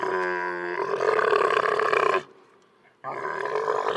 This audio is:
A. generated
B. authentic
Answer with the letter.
B